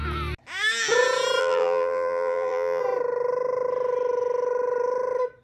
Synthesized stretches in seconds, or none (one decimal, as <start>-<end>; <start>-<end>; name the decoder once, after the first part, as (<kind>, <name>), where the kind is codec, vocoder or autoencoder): 1.4-2.8 (vocoder, BigVGAN v2)